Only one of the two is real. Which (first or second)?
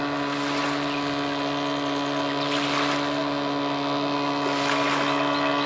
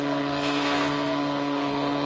first